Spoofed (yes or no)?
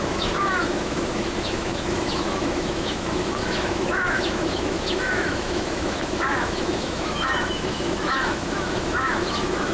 yes